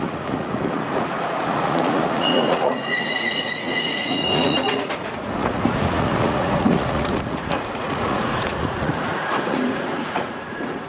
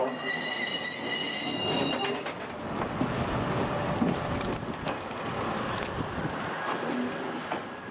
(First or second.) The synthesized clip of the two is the first